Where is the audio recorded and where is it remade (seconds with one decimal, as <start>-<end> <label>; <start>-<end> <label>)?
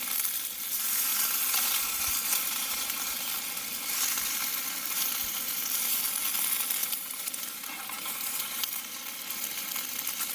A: 0.0-1.1 recorded; 1.1-3.3 remade; 3.3-6.8 recorded; 6.8-8.8 remade; 8.8-10.3 recorded